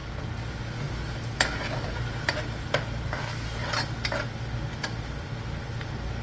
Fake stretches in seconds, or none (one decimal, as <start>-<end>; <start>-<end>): 0.0-0.5

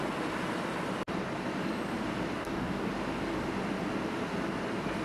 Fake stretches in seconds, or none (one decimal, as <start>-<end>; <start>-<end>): 2.4-2.9

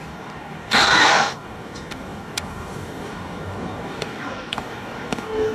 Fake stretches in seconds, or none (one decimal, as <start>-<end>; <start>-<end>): 0.0-5.5

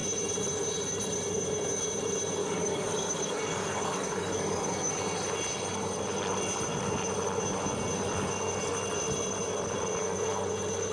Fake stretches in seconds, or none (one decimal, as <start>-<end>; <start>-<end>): 2.4-4.9

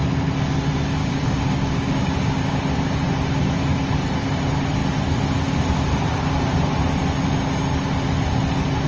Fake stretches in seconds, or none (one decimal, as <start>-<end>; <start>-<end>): 1.0-2.6

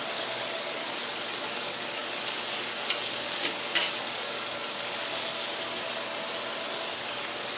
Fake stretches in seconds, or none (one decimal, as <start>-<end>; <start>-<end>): 0.0-6.2; 6.8-7.6

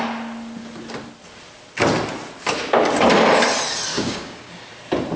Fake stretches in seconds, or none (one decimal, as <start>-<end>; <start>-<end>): 3.9-4.5